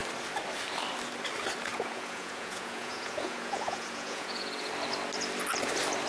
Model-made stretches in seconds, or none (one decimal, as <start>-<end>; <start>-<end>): 1.7-4.7